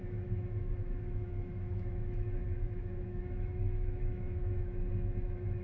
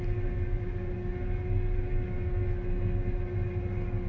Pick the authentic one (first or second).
second